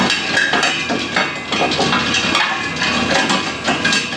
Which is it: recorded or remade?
recorded